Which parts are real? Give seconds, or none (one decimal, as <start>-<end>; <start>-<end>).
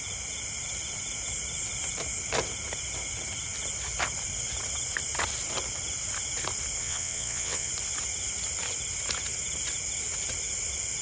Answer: 0.0-6.8; 7.7-11.0